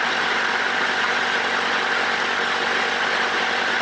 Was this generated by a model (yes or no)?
no